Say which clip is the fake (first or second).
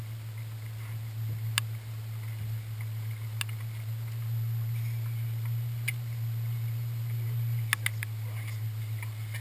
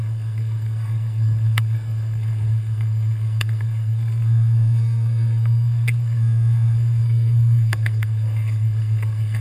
second